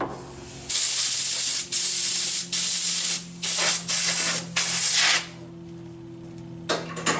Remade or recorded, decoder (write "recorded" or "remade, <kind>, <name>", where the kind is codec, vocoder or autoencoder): recorded